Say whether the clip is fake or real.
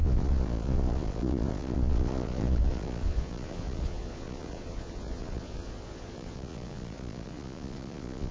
fake